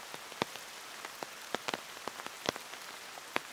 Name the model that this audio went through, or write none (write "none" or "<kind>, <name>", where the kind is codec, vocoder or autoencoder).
none